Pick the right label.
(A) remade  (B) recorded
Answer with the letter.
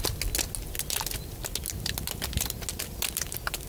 B